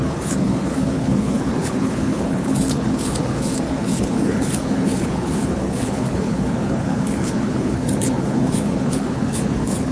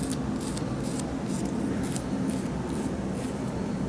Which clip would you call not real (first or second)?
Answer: first